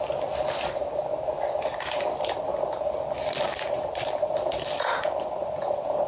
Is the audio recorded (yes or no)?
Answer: yes